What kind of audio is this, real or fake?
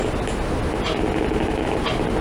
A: real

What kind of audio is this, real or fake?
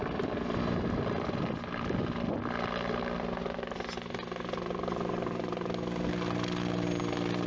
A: real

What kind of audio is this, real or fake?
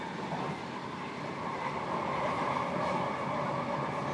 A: real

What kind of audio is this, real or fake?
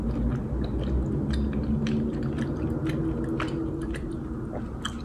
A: real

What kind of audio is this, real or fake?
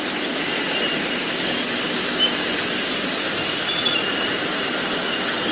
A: real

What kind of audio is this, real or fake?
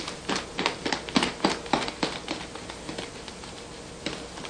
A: real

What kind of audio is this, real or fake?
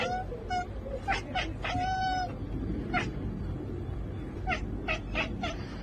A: real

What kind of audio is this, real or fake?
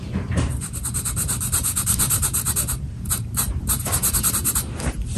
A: fake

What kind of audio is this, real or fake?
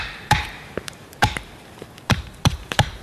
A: fake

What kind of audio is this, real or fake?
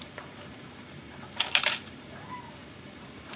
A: fake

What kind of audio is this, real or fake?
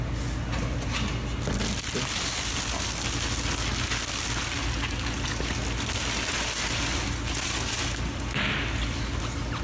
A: real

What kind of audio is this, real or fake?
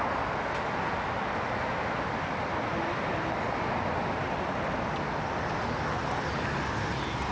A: real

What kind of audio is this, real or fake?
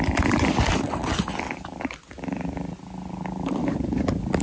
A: real